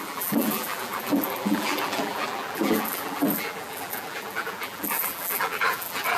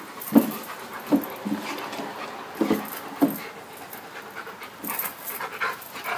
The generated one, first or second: first